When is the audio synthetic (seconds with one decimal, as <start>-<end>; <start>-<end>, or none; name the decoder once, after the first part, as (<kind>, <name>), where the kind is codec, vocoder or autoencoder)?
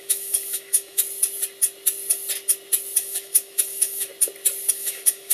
0.0-1.0 (autoencoder, DAC-VAE); 3.0-4.1; 4.7-5.3